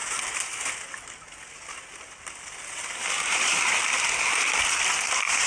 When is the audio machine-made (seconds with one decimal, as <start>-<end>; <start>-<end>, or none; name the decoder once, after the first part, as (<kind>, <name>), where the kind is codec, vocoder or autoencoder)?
none